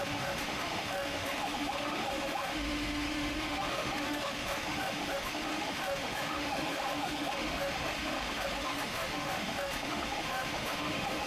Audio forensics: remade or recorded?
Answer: remade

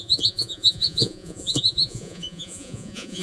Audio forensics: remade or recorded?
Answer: remade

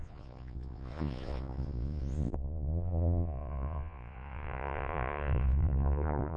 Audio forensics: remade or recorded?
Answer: remade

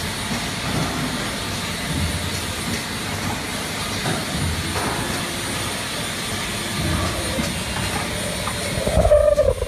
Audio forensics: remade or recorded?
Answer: recorded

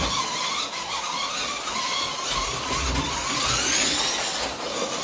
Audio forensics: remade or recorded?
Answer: recorded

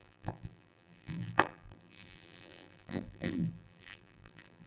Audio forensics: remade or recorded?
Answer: remade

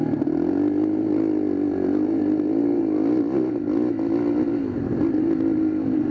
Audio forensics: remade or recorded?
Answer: recorded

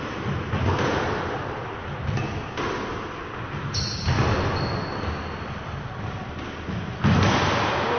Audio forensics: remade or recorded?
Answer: recorded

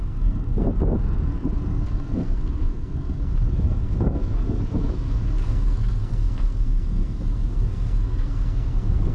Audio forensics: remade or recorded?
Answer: remade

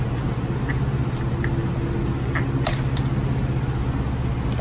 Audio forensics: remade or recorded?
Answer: recorded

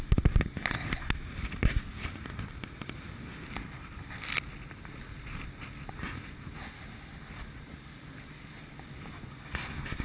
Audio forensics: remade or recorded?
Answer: recorded